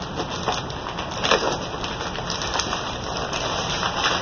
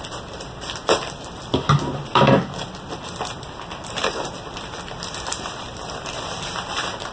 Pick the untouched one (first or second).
first